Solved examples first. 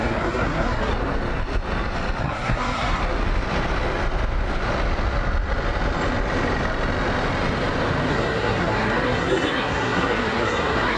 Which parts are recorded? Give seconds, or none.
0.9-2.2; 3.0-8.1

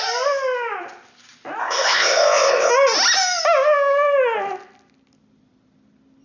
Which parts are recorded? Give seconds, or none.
0.0-1.6; 2.7-6.2

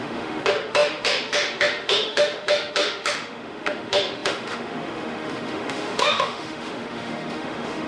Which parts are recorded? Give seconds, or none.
none

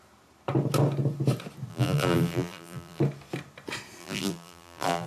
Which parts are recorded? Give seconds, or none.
0.0-1.7; 3.0-4.0

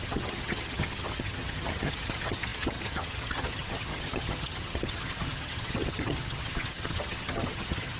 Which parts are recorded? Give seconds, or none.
none

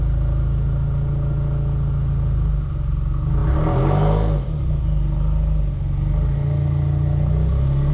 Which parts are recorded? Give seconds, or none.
0.0-7.9

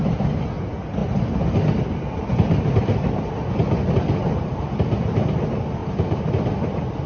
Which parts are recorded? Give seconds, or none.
0.0-5.8; 6.3-7.1

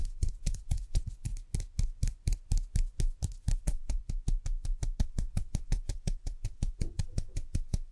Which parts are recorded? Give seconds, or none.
1.3-3.6; 4.0-5.0